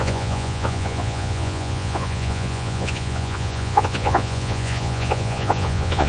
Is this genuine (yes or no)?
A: no